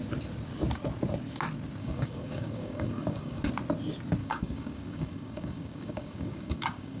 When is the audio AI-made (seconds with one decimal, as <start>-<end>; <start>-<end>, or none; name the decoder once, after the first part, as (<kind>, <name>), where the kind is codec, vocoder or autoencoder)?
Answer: 1.8-3.5 (codec, DAC); 4.2-7.0